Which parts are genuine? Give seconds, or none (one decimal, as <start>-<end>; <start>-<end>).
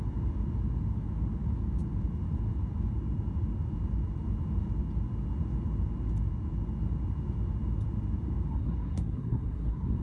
0.0-8.5